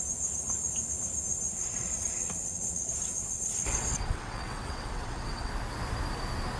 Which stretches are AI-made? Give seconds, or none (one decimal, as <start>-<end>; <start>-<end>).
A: 1.5-5.5